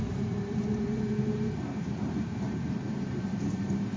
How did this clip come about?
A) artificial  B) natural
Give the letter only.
A